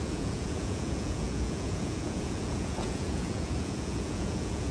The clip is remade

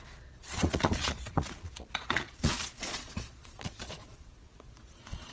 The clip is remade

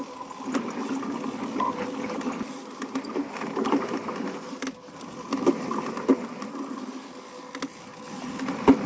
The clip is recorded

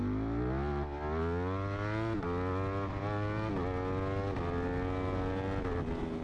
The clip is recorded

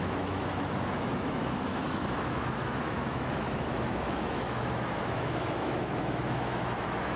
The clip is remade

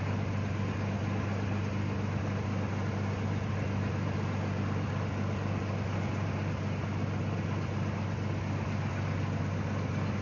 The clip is recorded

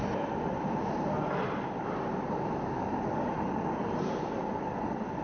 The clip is remade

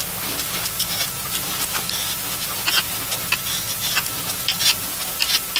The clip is recorded